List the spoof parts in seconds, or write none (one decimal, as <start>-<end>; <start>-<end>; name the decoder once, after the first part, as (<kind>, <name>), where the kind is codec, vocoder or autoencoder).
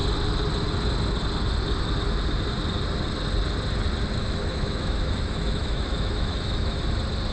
4.2-6.8 (autoencoder, DAC-VAE)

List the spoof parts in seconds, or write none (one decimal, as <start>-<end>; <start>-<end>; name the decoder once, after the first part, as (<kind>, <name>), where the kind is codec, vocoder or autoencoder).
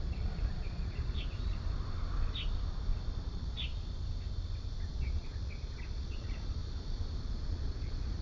0.0-1.5 (vocoder, Vocos); 3.3-3.7; 4.9-6.6; 7.2-8.2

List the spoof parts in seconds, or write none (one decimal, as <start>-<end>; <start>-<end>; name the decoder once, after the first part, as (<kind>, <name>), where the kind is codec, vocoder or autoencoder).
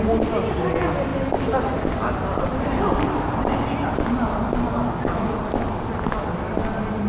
none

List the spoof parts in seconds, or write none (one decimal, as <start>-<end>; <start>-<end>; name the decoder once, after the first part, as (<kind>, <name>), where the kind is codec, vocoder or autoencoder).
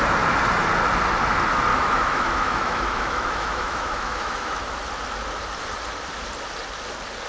1.7-4.6 (autoencoder, DAC-VAE)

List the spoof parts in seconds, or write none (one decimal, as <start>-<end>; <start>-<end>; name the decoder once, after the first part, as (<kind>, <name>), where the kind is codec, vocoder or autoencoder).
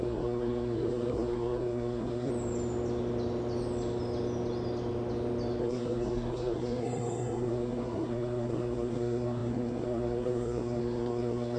0.0-2.3 (codec, SNAC); 5.6-11.6